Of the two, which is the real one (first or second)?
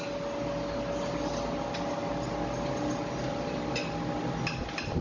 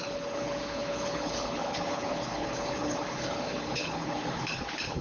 first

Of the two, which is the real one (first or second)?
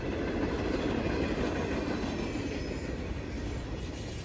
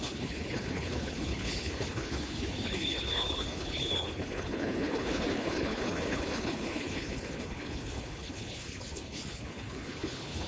first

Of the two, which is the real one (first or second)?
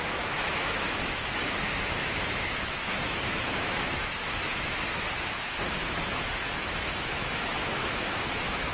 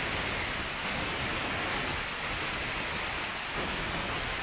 second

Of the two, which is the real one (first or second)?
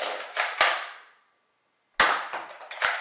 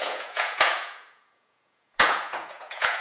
first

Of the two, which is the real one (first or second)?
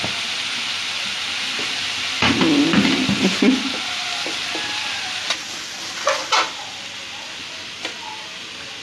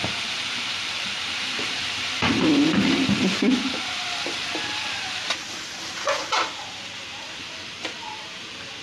first